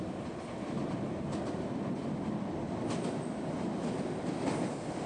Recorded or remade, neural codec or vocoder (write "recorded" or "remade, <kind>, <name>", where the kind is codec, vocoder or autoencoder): recorded